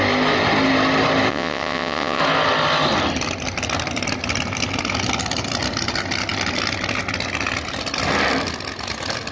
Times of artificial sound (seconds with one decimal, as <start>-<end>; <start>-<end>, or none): 1.3-2.2